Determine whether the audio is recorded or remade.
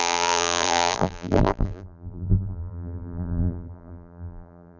remade